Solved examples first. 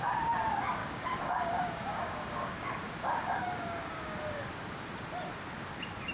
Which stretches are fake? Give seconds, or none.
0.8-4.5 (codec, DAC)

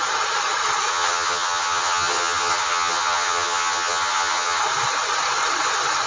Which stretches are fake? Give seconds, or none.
0.9-4.6 (vocoder, HiFi-GAN)